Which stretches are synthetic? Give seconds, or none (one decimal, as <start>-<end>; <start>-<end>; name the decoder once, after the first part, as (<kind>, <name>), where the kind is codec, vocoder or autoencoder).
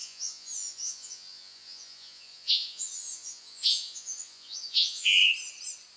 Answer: 0.0-5.2 (vocoder, Vocos)